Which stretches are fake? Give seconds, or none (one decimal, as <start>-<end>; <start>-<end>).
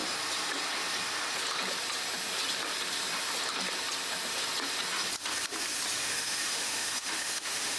6.0-7.8